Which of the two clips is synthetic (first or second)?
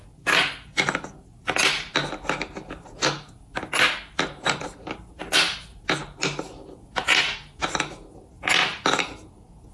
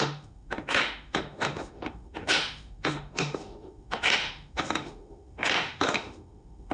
second